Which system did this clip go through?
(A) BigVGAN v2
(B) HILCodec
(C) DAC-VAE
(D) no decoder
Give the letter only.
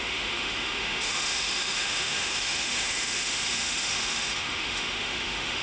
C